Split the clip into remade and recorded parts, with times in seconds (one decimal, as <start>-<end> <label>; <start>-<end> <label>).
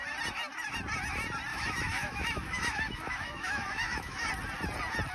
0.0-1.5 recorded; 1.5-4.3 remade; 4.3-5.1 recorded